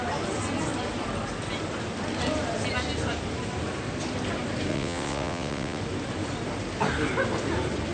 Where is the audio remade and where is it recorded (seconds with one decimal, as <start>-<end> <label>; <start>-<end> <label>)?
0.0-4.7 recorded; 4.7-5.8 remade; 5.8-7.9 recorded